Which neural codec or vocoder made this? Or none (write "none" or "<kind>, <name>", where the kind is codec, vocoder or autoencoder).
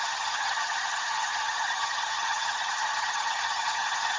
vocoder, HiFi-GAN